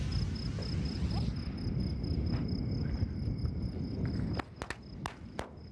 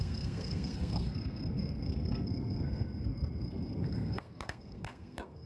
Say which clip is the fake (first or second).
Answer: second